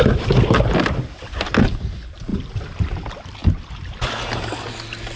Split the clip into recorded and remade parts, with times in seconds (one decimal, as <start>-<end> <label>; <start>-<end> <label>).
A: 0.0-5.2 recorded